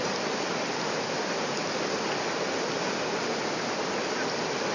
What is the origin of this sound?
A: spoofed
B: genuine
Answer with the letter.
B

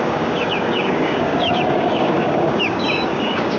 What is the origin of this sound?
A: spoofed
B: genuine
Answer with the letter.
A